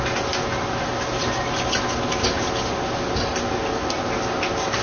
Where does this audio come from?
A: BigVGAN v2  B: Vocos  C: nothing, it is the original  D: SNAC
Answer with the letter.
C